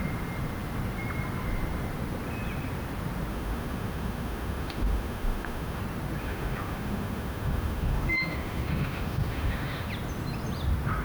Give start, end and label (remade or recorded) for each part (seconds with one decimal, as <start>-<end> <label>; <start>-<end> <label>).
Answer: 0.0-3.3 recorded; 3.3-5.8 remade; 5.8-6.2 recorded; 6.2-9.9 remade; 9.9-11.0 recorded